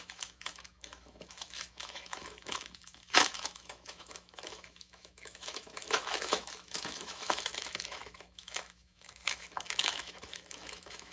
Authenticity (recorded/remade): remade